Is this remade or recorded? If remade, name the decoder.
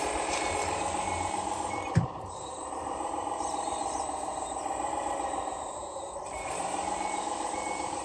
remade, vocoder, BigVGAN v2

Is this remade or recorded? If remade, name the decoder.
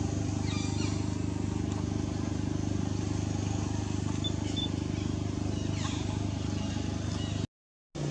recorded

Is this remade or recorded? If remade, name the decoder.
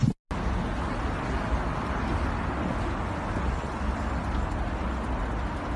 recorded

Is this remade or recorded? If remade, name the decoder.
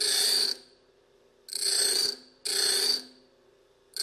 recorded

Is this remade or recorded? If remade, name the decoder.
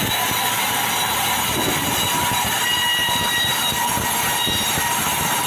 remade, vocoder, BigVGAN v2